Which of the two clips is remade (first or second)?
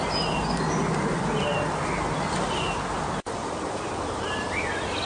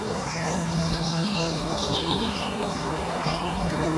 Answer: second